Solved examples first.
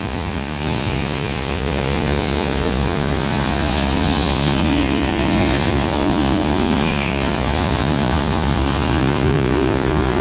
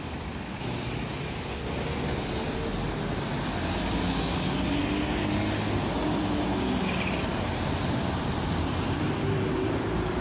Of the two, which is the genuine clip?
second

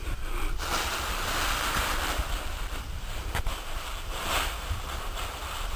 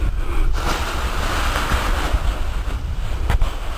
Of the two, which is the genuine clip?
second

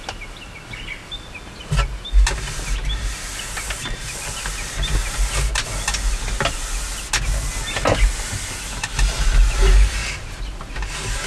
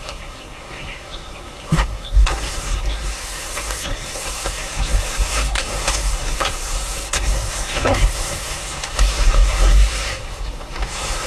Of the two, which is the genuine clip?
first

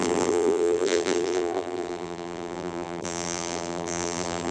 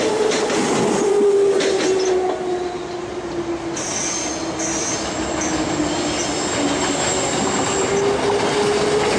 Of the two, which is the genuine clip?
second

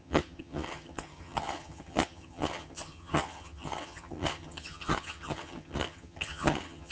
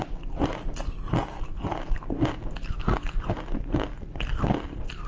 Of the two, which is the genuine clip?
second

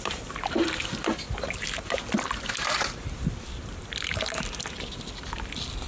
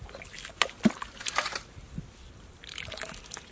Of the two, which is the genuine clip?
second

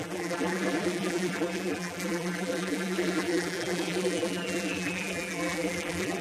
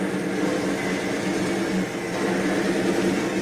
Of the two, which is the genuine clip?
second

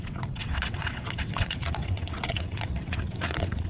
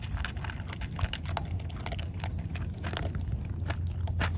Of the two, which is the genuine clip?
second